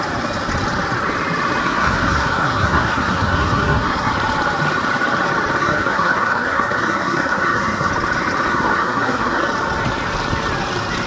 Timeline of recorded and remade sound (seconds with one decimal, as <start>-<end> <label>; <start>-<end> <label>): 0.0-1.6 recorded; 1.6-4.1 remade; 4.1-5.6 recorded; 5.6-7.9 remade; 7.9-8.5 recorded; 8.5-9.4 remade; 9.4-11.1 recorded